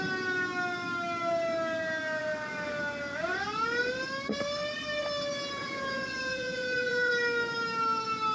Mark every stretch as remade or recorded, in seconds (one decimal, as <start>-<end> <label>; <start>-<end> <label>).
0.0-5.6 recorded; 5.6-7.1 remade; 7.1-8.3 recorded

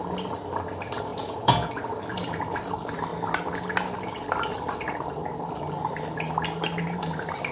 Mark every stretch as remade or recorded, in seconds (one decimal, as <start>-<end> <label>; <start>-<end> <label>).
0.0-1.1 recorded; 1.1-1.7 remade; 1.7-7.5 recorded

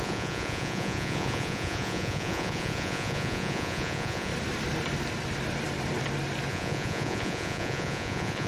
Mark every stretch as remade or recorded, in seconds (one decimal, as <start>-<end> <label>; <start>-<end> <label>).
0.0-4.3 remade; 4.3-6.5 recorded; 6.5-8.5 remade

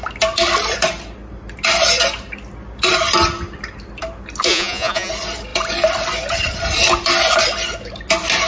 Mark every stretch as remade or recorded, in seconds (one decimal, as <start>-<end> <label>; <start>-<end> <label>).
0.0-4.5 recorded; 4.5-5.1 remade; 5.1-8.5 recorded

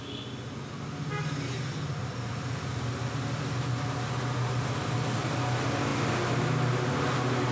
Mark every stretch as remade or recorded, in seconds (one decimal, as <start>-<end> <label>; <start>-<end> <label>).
0.0-7.5 recorded

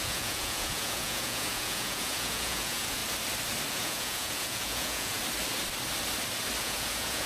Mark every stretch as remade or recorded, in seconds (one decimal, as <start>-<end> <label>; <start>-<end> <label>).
0.0-3.0 remade; 3.0-3.7 recorded; 3.7-5.2 remade; 5.2-6.6 recorded; 6.6-7.3 remade

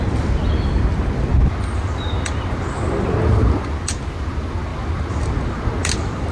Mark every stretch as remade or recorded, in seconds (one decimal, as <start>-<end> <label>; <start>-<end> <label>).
0.0-6.3 recorded

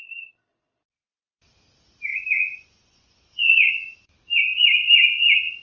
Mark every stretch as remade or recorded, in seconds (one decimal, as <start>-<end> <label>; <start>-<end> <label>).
0.0-2.1 recorded; 2.1-4.1 remade; 4.1-5.6 recorded